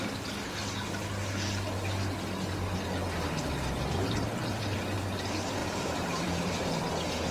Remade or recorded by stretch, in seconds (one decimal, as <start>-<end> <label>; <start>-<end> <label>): 0.0-5.6 recorded; 5.6-6.8 remade; 6.8-7.3 recorded